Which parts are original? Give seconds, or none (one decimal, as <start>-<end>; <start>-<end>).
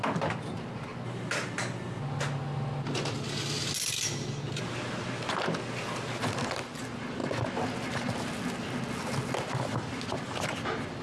0.0-11.0